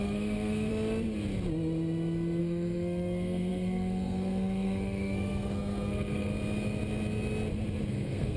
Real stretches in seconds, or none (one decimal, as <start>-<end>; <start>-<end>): 0.7-2.4; 6.3-7.9

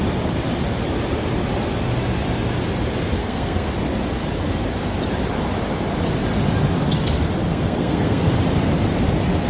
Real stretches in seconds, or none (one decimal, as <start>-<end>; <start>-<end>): 0.0-3.2; 3.7-7.5; 8.3-9.5

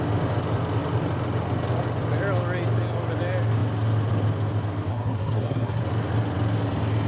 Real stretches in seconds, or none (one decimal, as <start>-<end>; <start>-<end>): 0.0-4.9; 5.8-7.1

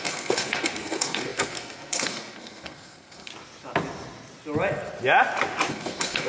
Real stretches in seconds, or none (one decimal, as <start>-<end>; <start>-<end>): 3.3-5.7